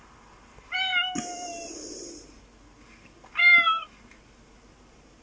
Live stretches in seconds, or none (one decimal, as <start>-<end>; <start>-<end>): 0.0-5.2